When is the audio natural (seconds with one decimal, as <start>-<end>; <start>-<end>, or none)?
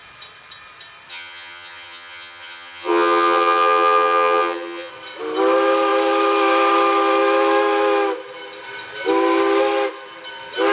0.0-1.1; 4.9-10.7